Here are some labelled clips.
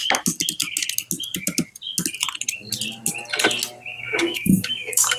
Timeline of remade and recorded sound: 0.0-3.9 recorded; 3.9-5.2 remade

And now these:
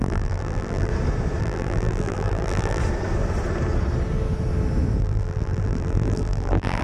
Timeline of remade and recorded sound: 0.0-0.9 remade; 0.9-1.4 recorded; 1.4-2.8 remade; 2.8-5.0 recorded; 5.0-6.8 remade

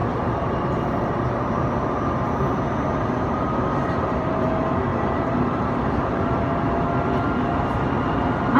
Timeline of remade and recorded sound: 0.0-4.5 remade; 4.5-4.9 recorded; 4.9-6.3 remade; 6.3-8.6 recorded

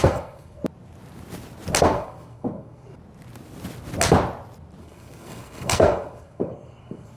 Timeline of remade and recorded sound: 0.0-0.6 remade; 0.6-1.8 recorded; 1.8-2.9 remade; 2.9-4.8 recorded; 4.8-7.2 remade

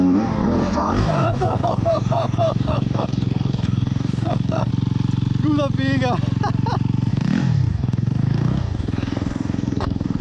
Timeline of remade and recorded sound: 0.0-4.7 remade; 4.7-7.1 recorded; 7.1-10.2 remade

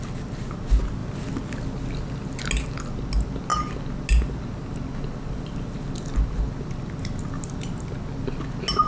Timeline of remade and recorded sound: 0.0-8.9 recorded

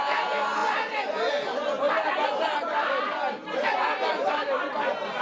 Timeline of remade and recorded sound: 0.0-4.1 recorded; 4.1-4.6 remade; 4.6-5.2 recorded

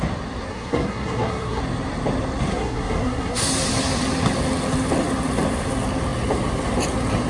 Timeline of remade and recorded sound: 0.0-0.5 recorded; 0.5-1.6 remade; 1.6-2.5 recorded; 2.5-3.5 remade; 3.5-7.3 recorded